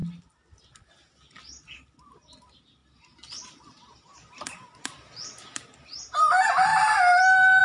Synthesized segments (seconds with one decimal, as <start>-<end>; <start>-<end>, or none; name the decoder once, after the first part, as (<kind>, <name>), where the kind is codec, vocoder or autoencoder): 6.7-7.6 (vocoder, BigVGAN v2)